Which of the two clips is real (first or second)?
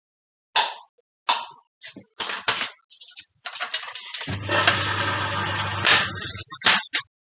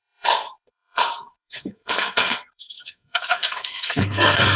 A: first